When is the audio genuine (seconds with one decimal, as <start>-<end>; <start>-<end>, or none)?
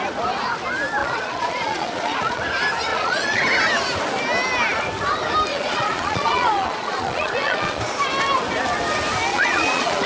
0.0-1.0; 2.4-2.9; 3.4-5.5; 7.8-9.3